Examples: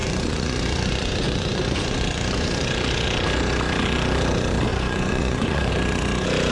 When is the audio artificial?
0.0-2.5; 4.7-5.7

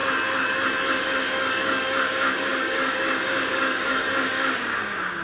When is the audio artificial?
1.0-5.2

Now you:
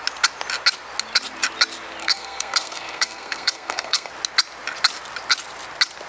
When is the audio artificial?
2.0-4.1

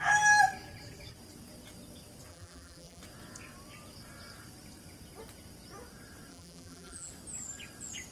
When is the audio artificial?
2.3-3.0; 6.3-7.1

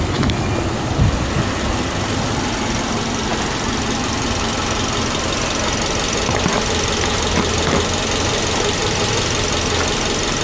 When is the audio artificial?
none

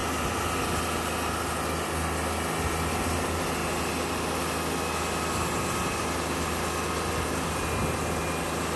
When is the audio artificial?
none

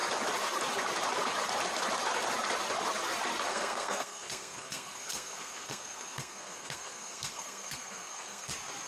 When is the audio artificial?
3.5-8.5